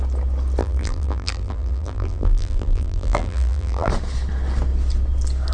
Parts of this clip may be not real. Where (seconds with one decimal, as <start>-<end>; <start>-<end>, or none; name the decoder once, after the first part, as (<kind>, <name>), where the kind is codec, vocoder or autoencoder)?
0.6-3.9 (vocoder, BigVGAN v2)